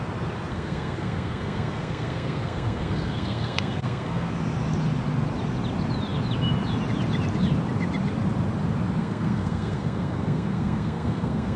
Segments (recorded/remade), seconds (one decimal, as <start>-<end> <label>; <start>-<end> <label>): 0.0-0.5 recorded; 0.5-4.3 remade; 4.3-9.0 recorded; 9.0-11.6 remade